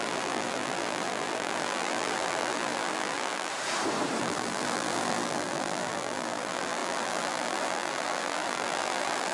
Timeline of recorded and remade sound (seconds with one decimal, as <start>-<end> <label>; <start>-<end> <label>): 0.0-3.5 remade; 3.5-4.2 recorded; 4.2-9.3 remade